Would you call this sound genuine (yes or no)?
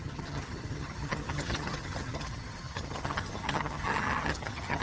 no